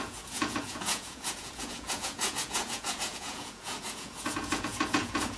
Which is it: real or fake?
fake